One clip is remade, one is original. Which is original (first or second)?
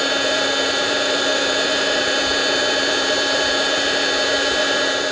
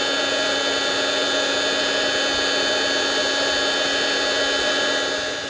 second